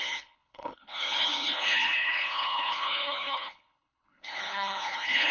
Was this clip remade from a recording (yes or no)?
yes